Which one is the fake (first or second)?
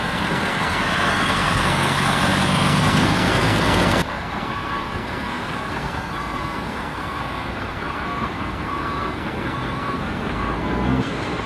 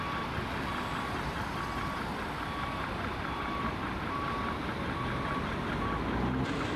first